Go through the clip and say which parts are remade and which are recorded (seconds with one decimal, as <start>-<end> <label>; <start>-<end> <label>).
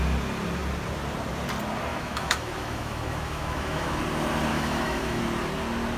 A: 0.0-1.9 recorded; 1.9-4.0 remade; 4.0-4.5 recorded; 4.5-5.2 remade; 5.2-6.0 recorded